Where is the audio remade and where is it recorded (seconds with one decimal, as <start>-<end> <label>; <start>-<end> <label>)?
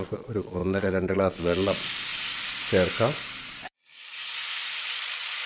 0.0-2.1 remade; 2.1-3.4 recorded; 3.4-4.1 remade; 4.1-4.7 recorded; 4.7-5.5 remade